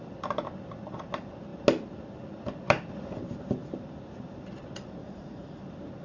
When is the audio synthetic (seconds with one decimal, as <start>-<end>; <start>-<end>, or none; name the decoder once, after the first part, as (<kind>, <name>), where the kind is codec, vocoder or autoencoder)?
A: 5.0-5.6 (vocoder, Vocos)